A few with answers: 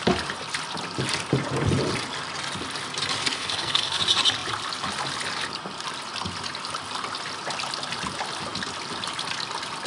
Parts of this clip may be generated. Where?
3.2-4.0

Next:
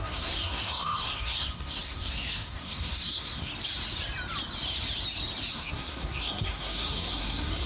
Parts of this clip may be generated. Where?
0.0-3.5; 5.5-7.7

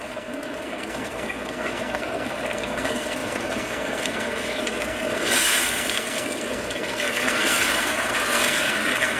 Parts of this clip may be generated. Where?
0.0-9.2

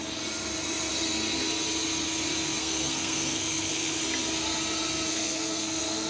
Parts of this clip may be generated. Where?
2.6-4.0; 5.1-6.1

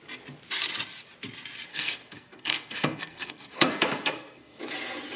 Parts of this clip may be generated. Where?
1.7-4.6

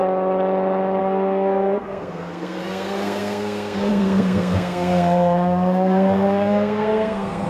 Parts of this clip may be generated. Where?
1.0-7.5

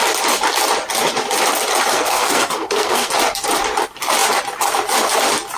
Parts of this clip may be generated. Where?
1.9-3.1